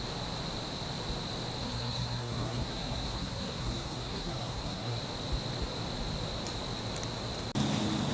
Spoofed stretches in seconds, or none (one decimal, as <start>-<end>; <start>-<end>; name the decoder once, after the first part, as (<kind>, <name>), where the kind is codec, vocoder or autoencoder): 1.6-5.0 (codec, SNAC)